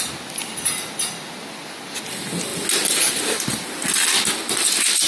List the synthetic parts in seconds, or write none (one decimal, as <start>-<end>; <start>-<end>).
none